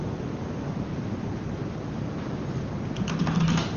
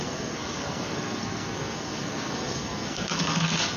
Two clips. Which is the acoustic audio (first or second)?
first